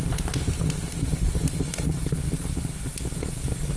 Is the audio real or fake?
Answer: real